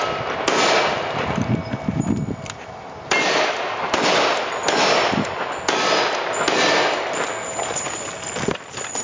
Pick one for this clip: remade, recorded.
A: recorded